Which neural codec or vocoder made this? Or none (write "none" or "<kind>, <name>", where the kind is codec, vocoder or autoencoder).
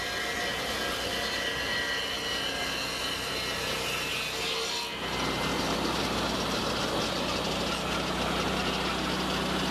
none